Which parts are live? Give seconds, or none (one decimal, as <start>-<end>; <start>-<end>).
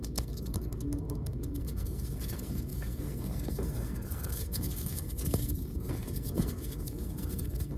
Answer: none